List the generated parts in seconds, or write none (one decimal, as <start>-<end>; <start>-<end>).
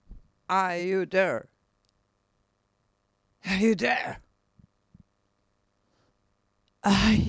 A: none